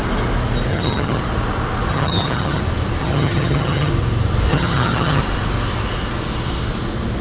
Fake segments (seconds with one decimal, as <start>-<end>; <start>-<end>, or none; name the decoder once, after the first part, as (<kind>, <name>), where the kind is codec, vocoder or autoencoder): 0.7-1.2 (vocoder, HiFi-GAN); 1.9-2.6; 3.0-3.9; 4.5-5.2